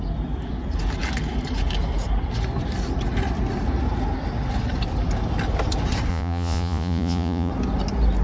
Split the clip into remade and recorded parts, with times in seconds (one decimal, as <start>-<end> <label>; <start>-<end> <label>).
0.0-6.1 recorded; 6.1-7.5 remade; 7.5-8.2 recorded